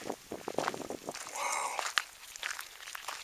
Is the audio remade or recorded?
recorded